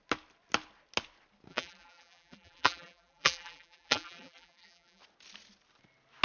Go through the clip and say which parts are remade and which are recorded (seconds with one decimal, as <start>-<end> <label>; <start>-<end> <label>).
0.0-1.5 recorded; 1.5-5.0 remade; 5.0-6.2 recorded